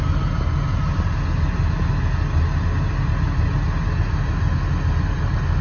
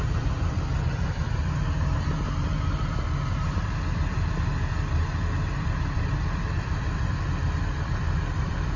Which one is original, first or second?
first